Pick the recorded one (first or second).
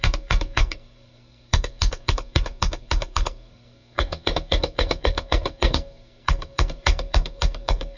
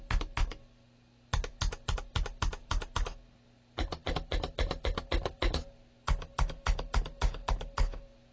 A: second